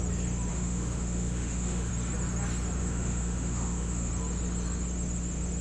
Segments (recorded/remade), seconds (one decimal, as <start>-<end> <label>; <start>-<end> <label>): 0.0-0.5 recorded; 0.5-1.9 remade; 1.9-2.8 recorded; 2.8-4.1 remade; 4.1-5.6 recorded